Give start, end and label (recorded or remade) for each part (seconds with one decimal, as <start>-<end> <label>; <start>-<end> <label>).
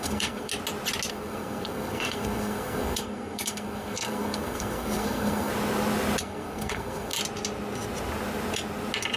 0.0-0.5 remade; 0.5-1.1 recorded; 1.1-5.5 remade; 5.5-6.2 recorded; 6.2-7.1 remade; 7.1-9.2 recorded